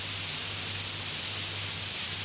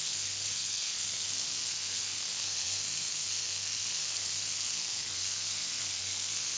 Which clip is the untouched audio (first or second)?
first